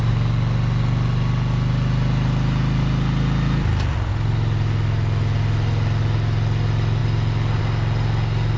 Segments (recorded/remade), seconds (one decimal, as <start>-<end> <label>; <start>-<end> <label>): 0.0-8.6 recorded